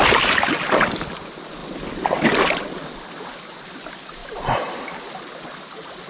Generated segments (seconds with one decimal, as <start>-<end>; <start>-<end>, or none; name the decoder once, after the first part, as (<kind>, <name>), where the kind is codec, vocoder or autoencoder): 4.2-5.2 (vocoder, BigVGAN v2)